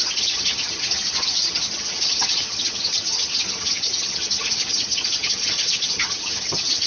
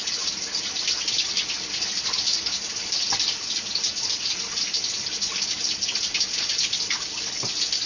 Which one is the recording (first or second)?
second